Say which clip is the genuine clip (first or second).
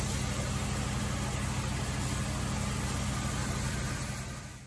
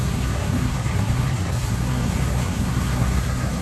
first